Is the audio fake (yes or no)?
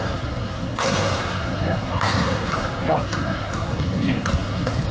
yes